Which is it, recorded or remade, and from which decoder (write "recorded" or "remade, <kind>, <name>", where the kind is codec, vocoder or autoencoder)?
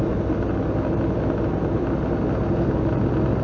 recorded